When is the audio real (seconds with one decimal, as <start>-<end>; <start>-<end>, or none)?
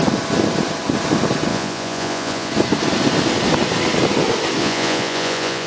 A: 0.0-1.5; 2.5-4.6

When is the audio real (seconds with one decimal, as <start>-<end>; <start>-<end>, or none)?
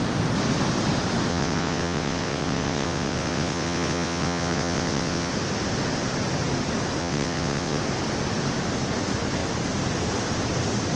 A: 0.0-1.3; 5.3-7.0; 7.8-11.0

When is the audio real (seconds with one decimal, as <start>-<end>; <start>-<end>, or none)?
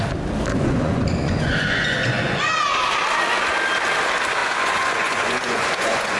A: 0.0-0.5; 2.5-4.4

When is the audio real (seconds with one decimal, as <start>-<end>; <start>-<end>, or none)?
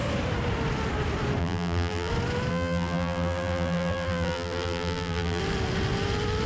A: 0.0-1.4; 2.1-2.5; 5.4-6.5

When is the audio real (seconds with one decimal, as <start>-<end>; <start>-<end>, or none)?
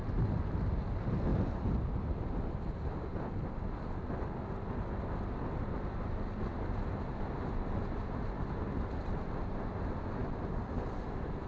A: 0.0-11.5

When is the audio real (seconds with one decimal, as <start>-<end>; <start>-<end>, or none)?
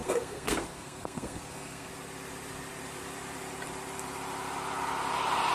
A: 1.9-5.5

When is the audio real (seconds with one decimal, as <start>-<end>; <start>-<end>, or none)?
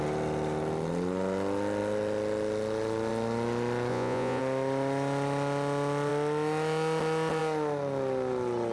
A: 0.0-3.9; 4.4-8.7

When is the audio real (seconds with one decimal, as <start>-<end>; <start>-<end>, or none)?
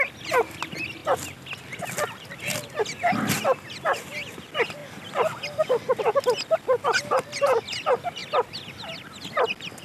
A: 0.0-9.8